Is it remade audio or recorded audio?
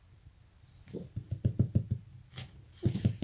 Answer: recorded